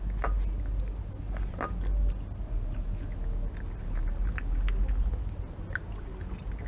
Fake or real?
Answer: real